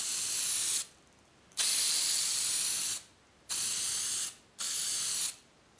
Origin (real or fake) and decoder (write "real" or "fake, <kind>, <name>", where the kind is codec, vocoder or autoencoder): real